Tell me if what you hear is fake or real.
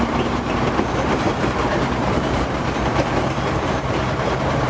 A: fake